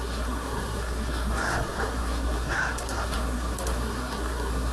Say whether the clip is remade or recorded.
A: remade